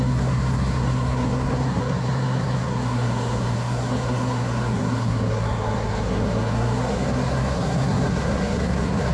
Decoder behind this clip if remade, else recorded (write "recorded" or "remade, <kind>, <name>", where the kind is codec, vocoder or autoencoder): remade, codec, SNAC